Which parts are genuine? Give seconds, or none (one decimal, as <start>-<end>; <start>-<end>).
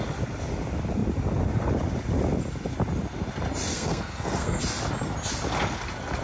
0.0-3.7; 4.6-6.2